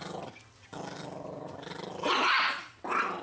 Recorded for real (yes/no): yes